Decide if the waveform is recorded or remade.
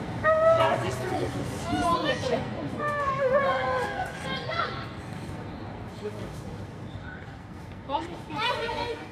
remade